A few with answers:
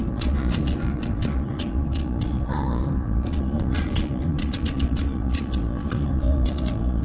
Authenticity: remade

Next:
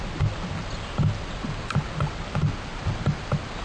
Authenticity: recorded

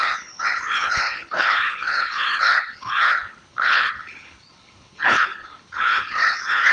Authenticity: remade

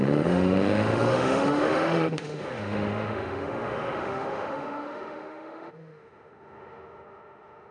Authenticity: remade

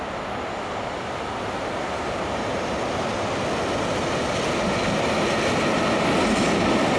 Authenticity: recorded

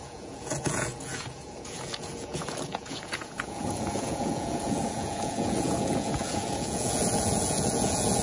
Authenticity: remade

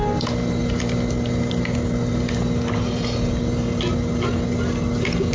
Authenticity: recorded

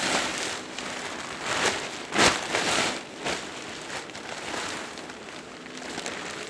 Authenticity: recorded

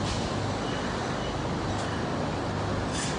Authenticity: recorded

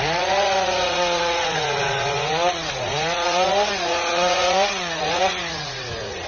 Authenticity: remade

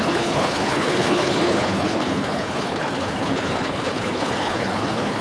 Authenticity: remade